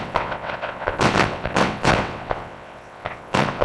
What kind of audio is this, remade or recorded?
remade